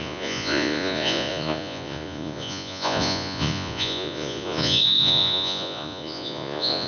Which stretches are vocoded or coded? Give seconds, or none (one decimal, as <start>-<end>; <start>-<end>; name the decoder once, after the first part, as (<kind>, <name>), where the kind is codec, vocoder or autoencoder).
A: 0.0-6.9 (vocoder, Vocos)